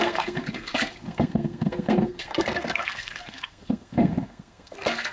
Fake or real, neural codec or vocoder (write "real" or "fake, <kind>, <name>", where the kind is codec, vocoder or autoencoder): fake, codec, SNAC